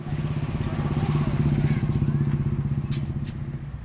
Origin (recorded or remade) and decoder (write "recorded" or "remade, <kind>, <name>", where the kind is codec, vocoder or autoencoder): recorded